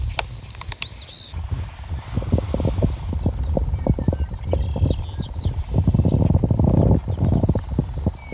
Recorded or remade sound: recorded